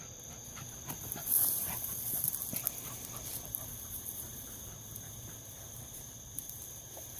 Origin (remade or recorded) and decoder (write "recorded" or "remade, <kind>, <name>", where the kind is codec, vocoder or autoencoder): recorded